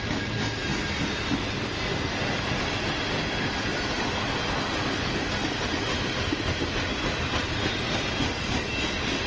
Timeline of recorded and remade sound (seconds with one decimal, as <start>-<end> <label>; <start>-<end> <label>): 0.0-9.3 recorded

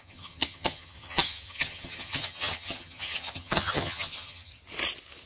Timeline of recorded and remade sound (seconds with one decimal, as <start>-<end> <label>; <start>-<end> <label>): 0.0-4.5 remade; 4.5-5.3 recorded

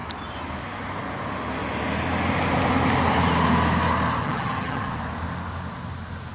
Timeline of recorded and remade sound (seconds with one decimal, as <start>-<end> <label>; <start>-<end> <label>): 0.0-4.2 recorded; 4.2-4.9 remade; 4.9-6.3 recorded

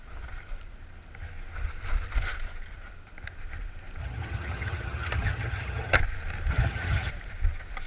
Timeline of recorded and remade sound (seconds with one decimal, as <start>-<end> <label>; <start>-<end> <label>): 0.0-4.0 recorded; 4.0-6.0 remade; 6.0-6.5 recorded; 6.5-7.1 remade; 7.1-7.9 recorded

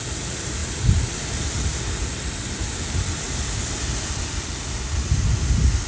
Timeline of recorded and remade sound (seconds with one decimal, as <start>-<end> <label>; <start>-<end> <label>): 0.0-5.9 recorded

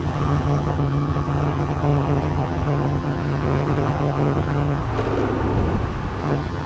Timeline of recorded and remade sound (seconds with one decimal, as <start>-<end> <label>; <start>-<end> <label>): 0.0-4.8 remade; 4.8-6.2 recorded; 6.2-6.7 remade

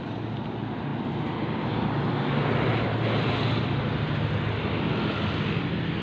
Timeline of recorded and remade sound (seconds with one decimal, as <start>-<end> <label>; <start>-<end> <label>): 0.0-6.0 recorded

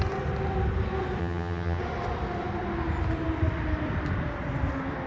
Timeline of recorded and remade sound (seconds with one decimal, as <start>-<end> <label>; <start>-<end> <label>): 0.0-1.2 recorded; 1.2-1.8 remade; 1.8-5.1 recorded